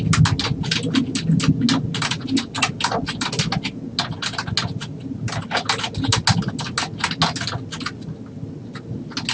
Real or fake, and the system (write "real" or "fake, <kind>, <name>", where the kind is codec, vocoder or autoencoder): real